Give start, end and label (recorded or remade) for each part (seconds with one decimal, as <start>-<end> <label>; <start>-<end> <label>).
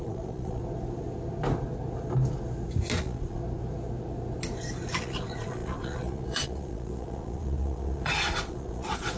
0.0-0.6 remade; 0.6-3.0 recorded; 3.0-3.4 remade; 3.4-5.0 recorded; 5.0-9.2 remade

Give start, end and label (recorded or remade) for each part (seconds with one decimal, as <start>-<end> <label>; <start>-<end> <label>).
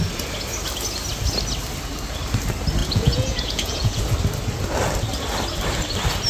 0.0-2.8 recorded; 2.8-4.0 remade; 4.0-6.3 recorded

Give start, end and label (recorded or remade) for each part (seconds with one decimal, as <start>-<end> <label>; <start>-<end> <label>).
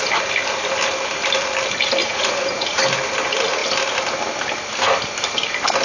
0.0-2.0 recorded; 2.0-2.8 remade; 2.8-5.8 recorded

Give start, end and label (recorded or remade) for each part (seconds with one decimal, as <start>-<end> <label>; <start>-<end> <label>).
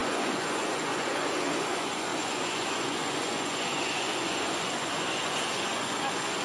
0.0-6.4 remade